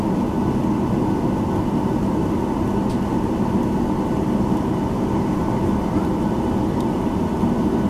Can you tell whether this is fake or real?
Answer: real